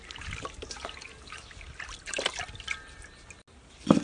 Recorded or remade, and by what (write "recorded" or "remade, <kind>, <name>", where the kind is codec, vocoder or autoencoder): recorded